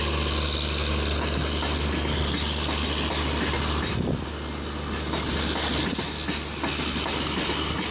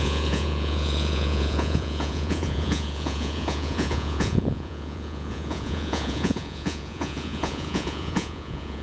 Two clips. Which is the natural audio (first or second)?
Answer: first